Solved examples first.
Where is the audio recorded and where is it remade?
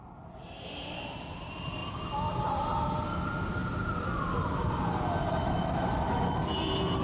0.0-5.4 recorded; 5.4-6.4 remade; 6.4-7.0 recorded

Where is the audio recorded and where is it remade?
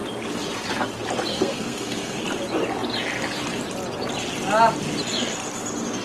0.0-1.3 recorded; 1.3-2.2 remade; 2.2-6.0 recorded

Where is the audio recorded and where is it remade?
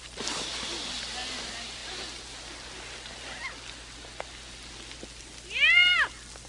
0.0-6.5 recorded